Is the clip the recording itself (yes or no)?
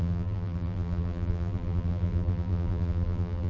no